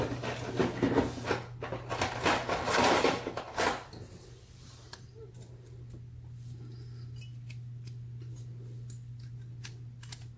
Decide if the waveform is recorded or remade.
recorded